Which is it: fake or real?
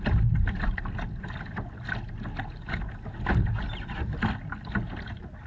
real